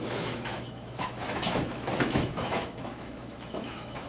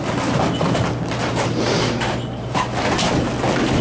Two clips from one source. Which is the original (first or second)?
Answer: second